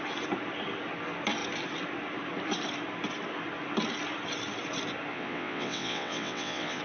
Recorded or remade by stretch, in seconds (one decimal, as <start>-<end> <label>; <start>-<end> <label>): 0.0-5.1 recorded; 5.1-6.8 remade